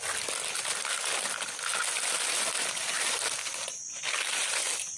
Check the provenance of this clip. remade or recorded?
recorded